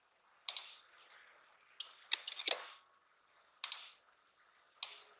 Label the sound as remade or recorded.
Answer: recorded